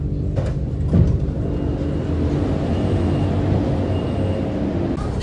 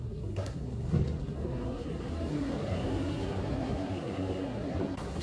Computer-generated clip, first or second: second